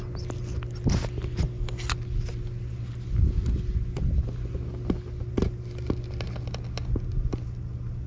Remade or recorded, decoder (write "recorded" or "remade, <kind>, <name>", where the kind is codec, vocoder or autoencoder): recorded